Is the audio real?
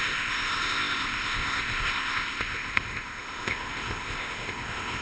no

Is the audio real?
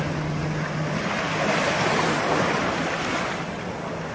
yes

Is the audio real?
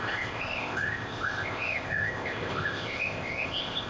no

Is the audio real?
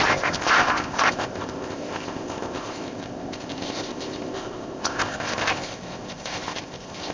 no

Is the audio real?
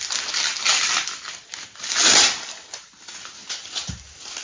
yes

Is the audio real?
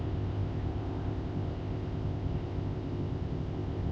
no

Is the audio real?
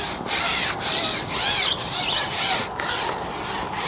yes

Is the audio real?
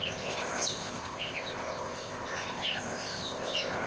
no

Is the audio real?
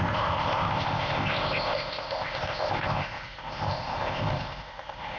no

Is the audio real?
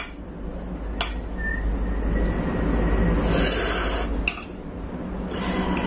yes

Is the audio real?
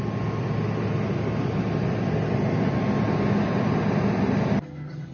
yes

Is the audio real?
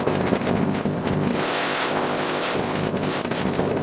no